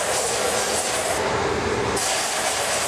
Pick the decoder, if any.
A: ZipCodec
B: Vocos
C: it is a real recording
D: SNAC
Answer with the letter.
C